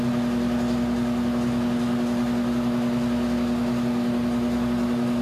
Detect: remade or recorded recorded